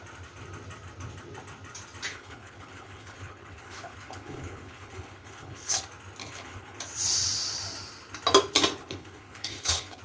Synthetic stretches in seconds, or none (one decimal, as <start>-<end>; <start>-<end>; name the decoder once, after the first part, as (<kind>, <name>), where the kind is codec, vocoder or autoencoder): 2.1-5.8 (codec, HILCodec); 6.2-6.8; 8.8-10.0